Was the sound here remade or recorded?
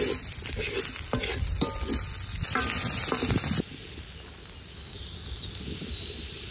recorded